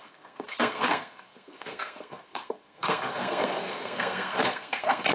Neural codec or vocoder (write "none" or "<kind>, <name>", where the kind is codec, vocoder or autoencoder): codec, SNAC